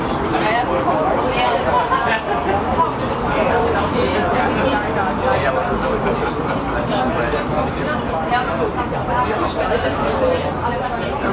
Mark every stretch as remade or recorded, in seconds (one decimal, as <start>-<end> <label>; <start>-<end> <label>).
0.0-11.3 recorded